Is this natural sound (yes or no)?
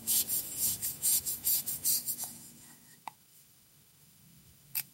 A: no